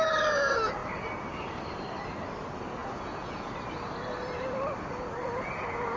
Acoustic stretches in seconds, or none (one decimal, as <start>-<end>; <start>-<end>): 0.0-2.8; 3.5-6.0